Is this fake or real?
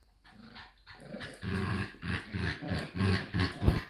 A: real